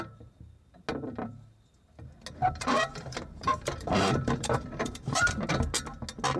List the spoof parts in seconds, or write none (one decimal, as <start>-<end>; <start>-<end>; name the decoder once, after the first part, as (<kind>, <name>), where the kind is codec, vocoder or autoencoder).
2.4-5.4 (vocoder, BigVGAN v2)